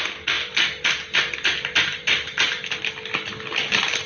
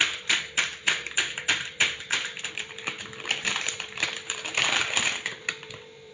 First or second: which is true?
first